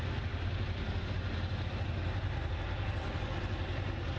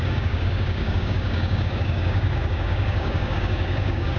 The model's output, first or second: second